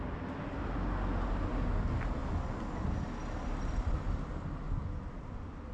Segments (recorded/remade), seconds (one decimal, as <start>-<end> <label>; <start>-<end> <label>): 0.0-5.7 recorded